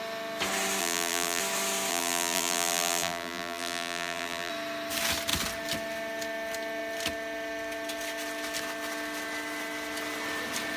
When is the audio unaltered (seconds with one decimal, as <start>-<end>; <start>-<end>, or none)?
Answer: 0.0-0.8; 1.4-1.9; 4.5-10.8